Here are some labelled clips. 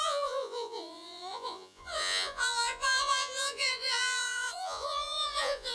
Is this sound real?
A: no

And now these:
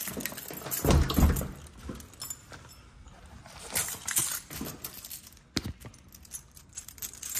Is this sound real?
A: yes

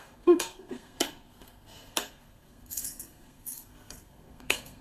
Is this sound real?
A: no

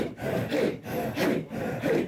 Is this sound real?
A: no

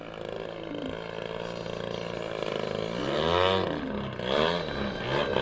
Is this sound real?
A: yes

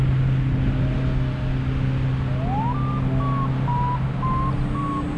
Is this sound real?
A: yes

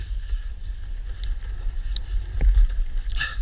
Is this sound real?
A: yes